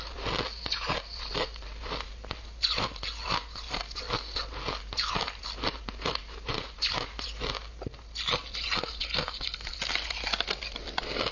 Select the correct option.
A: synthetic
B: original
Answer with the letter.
B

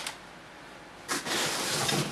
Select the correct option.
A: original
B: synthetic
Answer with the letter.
B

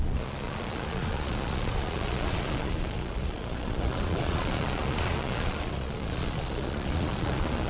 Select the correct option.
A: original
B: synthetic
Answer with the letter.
B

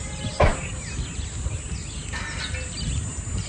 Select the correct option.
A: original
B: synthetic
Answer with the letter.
A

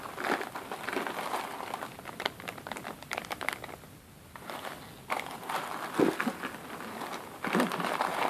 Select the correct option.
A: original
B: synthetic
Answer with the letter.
A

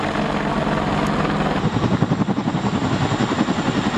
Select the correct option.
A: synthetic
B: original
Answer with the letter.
B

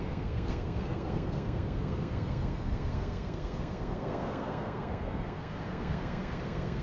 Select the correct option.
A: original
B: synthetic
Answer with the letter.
B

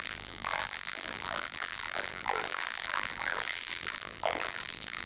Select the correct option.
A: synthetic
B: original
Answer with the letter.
A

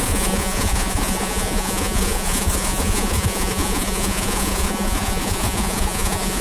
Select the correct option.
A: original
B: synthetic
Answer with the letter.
B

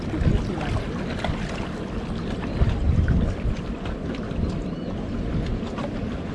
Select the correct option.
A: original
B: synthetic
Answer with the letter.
A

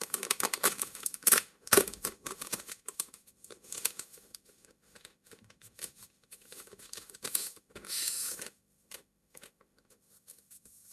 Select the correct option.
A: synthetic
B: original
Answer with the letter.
A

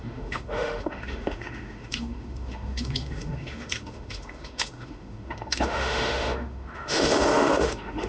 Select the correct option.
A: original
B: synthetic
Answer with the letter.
B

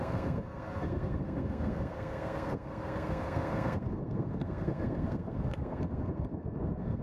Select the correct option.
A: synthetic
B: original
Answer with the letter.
A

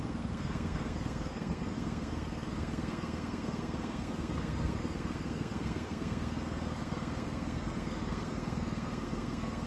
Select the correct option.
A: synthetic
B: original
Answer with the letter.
A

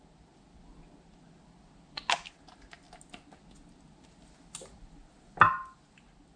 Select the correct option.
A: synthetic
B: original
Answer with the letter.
B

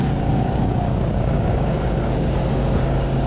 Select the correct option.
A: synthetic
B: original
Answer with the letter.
A